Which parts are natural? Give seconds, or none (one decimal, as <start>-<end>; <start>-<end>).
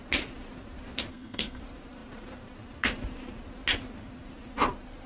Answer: 0.0-1.1; 1.6-5.1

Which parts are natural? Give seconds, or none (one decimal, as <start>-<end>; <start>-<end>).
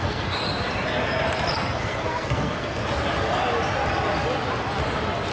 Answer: 0.4-1.5; 2.8-5.3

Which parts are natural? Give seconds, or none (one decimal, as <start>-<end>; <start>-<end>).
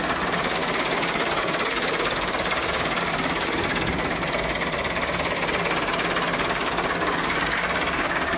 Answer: 3.7-6.5